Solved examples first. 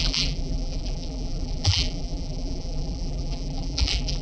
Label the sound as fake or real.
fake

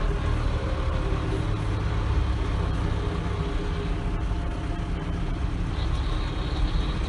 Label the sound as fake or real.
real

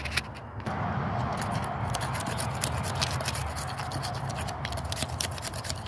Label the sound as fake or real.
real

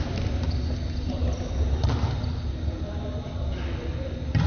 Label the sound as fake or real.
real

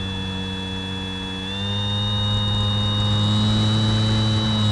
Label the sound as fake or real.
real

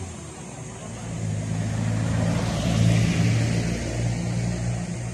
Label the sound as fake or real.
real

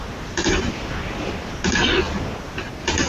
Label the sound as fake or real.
real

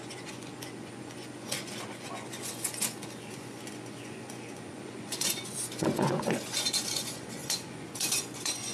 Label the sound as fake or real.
fake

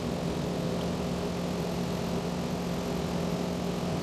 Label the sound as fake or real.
real